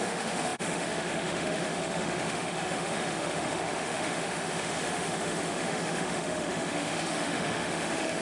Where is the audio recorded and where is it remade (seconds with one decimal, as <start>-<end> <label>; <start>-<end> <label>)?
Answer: 0.0-8.2 remade